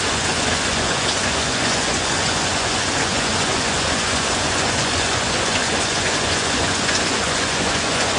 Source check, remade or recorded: remade